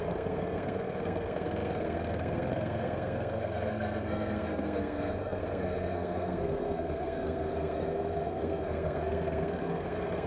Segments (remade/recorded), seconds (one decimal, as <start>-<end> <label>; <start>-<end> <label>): 0.0-10.3 remade